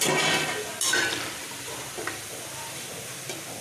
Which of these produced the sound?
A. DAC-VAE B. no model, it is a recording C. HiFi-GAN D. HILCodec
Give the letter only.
B